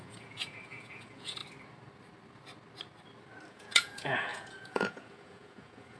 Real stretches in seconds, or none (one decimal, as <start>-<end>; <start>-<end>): 1.4-3.5